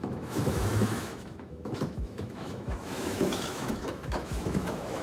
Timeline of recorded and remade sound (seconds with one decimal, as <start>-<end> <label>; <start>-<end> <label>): 0.0-5.0 remade